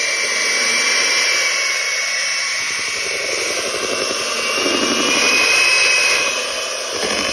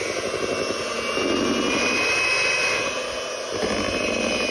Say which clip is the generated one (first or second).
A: first